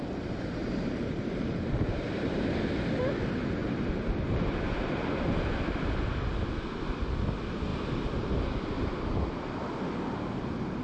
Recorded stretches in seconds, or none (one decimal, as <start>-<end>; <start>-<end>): 0.0-0.6; 2.4-3.6; 5.4-10.8